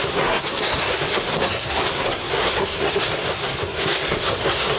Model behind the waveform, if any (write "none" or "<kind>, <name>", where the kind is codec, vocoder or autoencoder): codec, SNAC